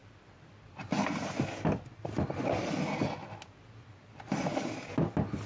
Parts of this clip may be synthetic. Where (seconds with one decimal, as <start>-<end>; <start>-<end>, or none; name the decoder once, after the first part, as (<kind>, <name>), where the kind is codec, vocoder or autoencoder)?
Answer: none